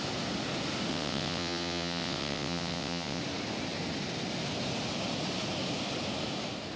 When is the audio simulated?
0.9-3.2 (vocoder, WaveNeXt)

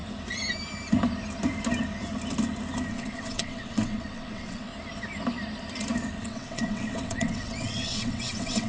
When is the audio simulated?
2.9-4.7 (vocoder, WaveNeXt); 6.2-8.7

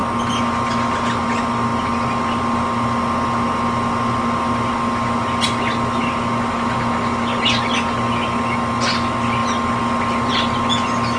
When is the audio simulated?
none

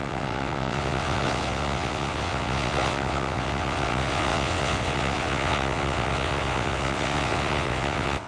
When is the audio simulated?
0.0-8.3 (vocoder, WaveNeXt)

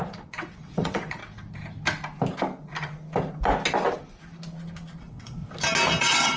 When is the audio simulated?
0.0-1.2 (vocoder, WaveNeXt); 5.0-5.4; 6.0-6.4

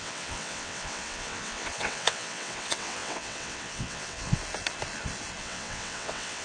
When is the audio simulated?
0.0-4.4 (vocoder, WaveNeXt); 5.4-6.4